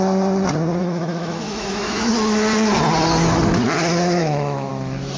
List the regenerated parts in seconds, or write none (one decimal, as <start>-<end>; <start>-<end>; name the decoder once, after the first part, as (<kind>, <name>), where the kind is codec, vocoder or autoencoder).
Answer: 0.8-2.1 (autoencoder, DAC-VAE); 4.2-4.7